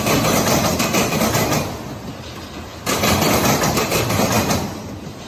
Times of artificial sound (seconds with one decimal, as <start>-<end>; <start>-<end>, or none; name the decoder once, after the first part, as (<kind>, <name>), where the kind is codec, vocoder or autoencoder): 0.7-1.3 (vocoder, BigVGAN v2); 2.7-4.3